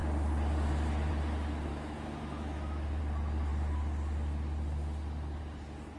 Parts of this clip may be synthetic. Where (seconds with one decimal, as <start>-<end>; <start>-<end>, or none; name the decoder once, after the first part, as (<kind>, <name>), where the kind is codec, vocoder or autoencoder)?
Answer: 1.7-3.0 (autoencoder, DAC-VAE)

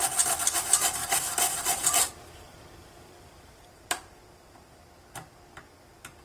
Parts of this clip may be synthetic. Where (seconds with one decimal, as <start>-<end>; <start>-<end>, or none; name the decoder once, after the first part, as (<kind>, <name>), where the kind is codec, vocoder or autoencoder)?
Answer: 1.0-2.1 (vocoder, BigVGAN v2); 2.8-4.8

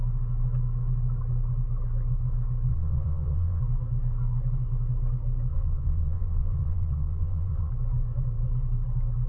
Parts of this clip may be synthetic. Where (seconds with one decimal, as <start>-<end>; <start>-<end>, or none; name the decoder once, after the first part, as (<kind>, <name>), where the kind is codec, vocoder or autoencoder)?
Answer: 2.7-3.6 (vocoder, Vocos); 5.5-7.7

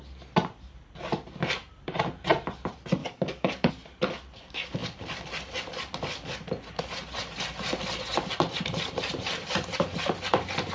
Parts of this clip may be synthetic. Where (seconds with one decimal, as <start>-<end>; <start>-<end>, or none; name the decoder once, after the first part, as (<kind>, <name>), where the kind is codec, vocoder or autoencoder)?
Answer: 3.0-3.7 (codec, DAC)